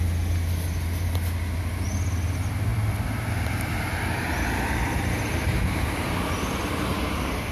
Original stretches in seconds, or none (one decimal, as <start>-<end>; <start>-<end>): 0.0-2.7; 6.7-7.5